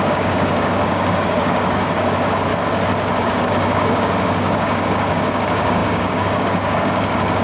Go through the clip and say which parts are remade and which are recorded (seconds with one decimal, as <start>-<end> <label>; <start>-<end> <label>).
0.0-2.5 remade; 2.5-3.2 recorded; 3.2-7.4 remade